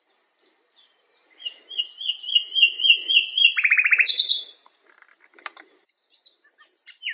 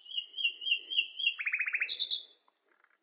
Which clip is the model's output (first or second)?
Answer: first